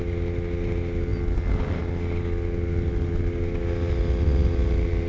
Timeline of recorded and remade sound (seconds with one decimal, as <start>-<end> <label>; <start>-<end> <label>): 0.0-5.1 recorded